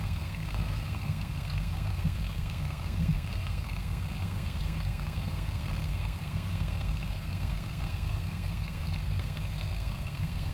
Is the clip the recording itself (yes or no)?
no